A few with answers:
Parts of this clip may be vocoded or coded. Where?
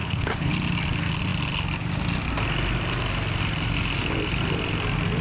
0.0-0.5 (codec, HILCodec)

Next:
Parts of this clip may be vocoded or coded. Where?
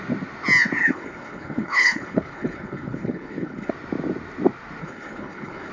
0.8-3.7 (codec, HILCodec); 4.8-5.7